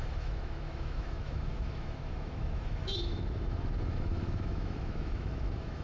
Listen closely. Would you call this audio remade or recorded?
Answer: remade